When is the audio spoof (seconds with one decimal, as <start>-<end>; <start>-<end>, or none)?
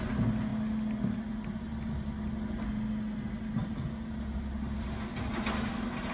none